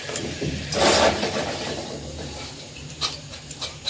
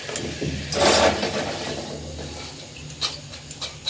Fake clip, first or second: first